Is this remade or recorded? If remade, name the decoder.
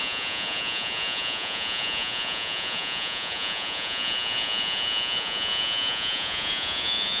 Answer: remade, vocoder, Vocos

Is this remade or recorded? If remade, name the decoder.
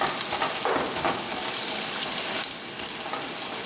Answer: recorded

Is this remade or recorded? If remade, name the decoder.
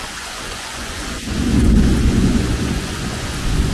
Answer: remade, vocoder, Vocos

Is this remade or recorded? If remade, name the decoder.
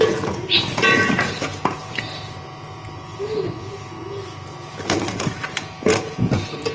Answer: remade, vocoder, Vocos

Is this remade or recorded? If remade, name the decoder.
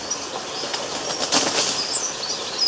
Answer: recorded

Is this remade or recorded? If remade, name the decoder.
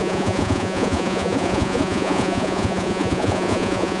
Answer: remade, vocoder, Vocos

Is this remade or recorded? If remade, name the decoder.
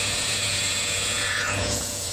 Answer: remade, vocoder, Vocos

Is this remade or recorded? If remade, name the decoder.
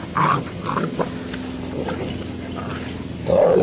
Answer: recorded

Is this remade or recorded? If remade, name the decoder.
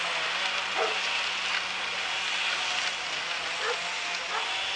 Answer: recorded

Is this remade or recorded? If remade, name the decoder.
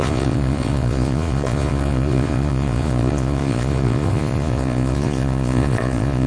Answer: remade, vocoder, Vocos